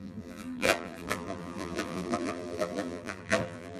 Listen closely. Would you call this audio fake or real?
fake